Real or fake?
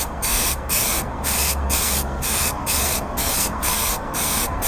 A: fake